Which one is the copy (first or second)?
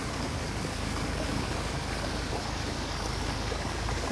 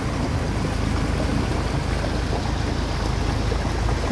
first